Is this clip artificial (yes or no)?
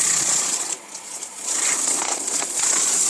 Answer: yes